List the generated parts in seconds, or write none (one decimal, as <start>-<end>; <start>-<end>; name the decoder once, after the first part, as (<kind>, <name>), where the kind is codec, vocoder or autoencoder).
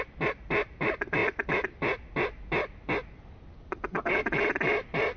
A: none